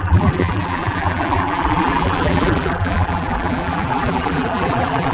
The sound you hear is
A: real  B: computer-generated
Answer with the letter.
B